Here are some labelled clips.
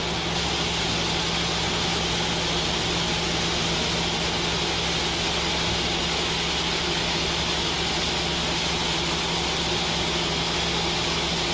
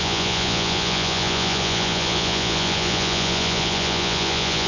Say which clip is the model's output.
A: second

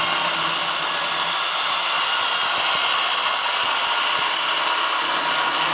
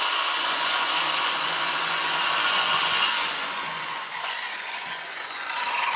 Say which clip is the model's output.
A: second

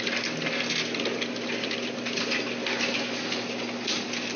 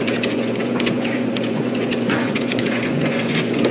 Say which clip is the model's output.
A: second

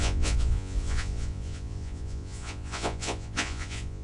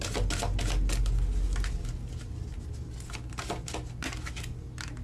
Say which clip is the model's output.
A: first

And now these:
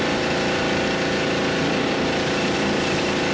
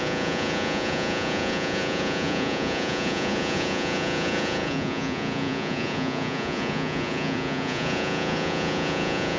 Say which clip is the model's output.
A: second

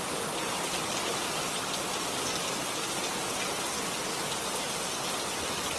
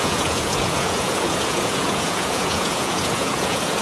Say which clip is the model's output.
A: second